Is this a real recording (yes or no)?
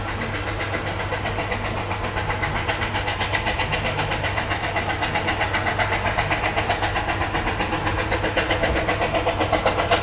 yes